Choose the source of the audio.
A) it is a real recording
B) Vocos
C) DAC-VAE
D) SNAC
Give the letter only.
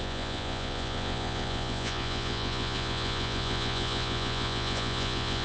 B